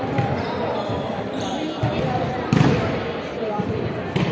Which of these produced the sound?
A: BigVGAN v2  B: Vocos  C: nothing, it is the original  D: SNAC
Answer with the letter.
A